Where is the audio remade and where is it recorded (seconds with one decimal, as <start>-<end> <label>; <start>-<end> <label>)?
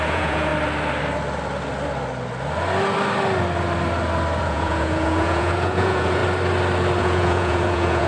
0.0-0.5 remade; 0.5-4.4 recorded; 4.4-6.2 remade; 6.2-7.0 recorded; 7.0-8.1 remade